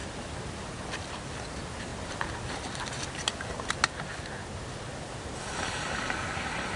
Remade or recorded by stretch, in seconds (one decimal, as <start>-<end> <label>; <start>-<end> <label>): 0.0-6.8 recorded